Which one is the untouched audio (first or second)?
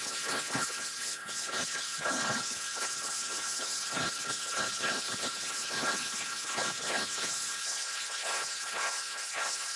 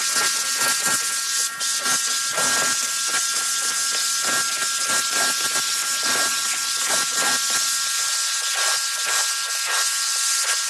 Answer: second